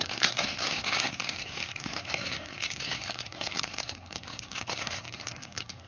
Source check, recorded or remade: remade